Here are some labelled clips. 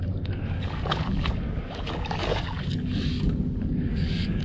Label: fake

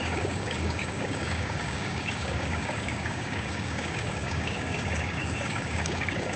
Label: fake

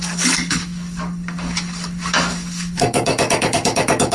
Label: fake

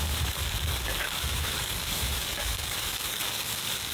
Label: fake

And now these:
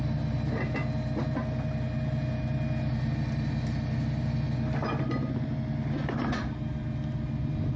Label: real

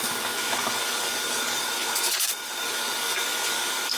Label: fake